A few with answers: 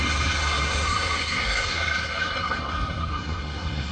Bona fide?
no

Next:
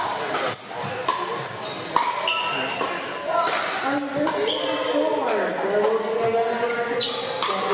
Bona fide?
yes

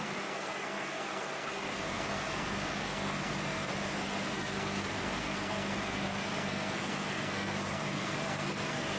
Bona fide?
no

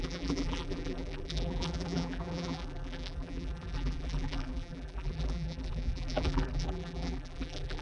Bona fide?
no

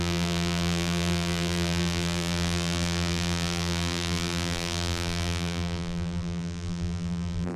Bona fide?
no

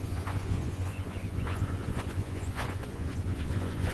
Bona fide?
no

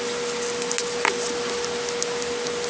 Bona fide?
yes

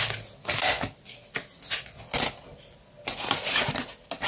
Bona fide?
yes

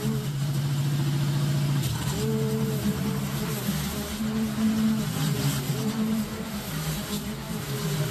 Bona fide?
yes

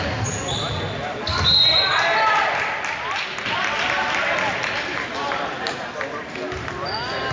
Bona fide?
yes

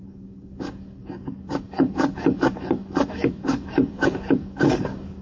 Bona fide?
no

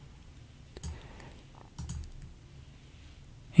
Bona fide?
yes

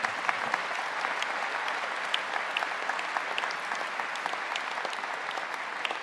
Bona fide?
yes